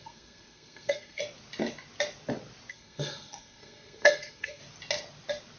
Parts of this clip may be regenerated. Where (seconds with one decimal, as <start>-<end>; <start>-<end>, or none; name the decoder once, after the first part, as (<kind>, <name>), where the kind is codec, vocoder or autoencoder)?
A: 0.0-1.2 (codec, SNAC); 2.7-4.6